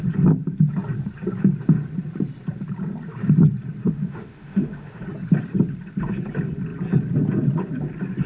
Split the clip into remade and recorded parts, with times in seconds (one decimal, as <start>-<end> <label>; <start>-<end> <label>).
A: 0.0-3.8 recorded; 3.8-5.0 remade; 5.0-8.3 recorded